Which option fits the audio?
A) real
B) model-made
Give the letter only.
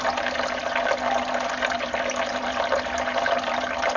A